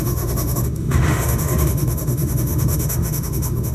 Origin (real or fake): fake